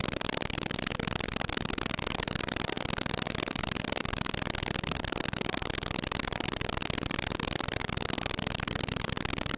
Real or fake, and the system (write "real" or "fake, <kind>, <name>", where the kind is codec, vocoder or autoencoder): real